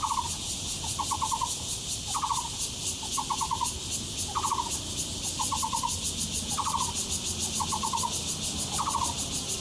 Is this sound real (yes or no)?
yes